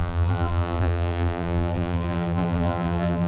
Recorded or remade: remade